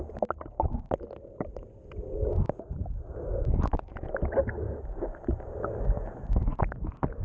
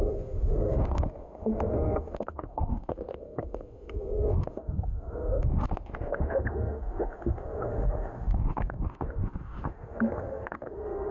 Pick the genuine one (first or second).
first